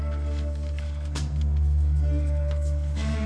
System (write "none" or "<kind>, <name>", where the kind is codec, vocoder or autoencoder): codec, SNAC